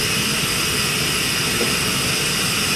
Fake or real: real